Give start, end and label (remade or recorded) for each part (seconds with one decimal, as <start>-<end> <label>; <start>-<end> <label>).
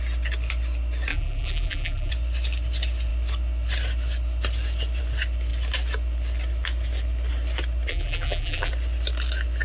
0.0-1.1 recorded; 1.1-2.1 remade; 2.1-7.9 recorded; 7.9-8.7 remade; 8.7-9.6 recorded